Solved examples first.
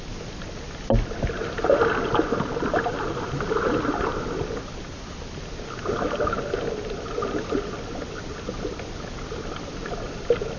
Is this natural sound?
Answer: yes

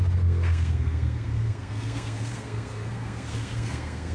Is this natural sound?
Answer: no